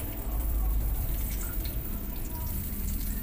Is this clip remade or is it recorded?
remade